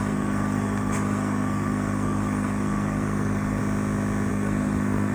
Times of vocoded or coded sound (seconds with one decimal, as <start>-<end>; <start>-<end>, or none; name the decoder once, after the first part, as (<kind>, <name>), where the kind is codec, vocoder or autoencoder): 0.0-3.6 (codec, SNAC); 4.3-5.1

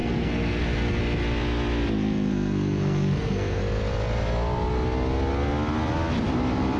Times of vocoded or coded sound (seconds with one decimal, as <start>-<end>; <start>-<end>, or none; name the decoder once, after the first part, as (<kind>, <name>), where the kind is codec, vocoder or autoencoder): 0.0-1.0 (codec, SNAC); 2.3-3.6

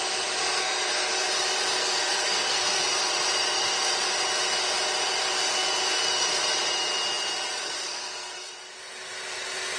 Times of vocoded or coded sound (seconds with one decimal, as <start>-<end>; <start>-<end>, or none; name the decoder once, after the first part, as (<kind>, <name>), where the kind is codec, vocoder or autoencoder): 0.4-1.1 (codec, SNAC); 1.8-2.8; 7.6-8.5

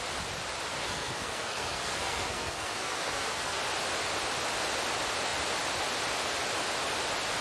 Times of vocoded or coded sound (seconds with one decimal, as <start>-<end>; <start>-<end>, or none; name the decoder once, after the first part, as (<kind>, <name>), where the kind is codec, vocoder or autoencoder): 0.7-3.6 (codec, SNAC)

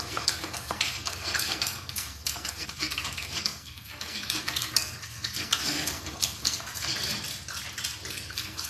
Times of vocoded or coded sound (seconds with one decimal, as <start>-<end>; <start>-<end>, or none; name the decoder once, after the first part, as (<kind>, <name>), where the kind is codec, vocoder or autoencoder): 0.0-6.9 (codec, SNAC); 8.1-8.7

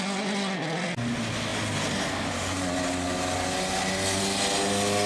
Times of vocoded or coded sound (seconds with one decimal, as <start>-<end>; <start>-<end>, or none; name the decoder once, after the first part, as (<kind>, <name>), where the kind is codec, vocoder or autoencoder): none

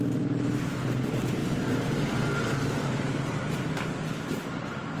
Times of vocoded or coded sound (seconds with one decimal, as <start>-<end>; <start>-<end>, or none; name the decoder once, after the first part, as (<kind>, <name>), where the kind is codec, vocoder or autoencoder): none